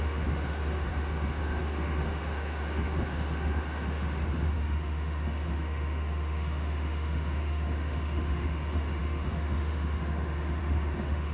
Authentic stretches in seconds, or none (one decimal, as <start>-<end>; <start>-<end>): none